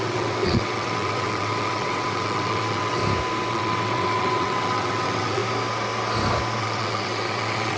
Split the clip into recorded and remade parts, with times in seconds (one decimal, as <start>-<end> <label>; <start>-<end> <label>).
0.0-3.0 remade; 3.0-3.5 recorded; 3.5-5.4 remade; 5.4-6.6 recorded; 6.6-7.8 remade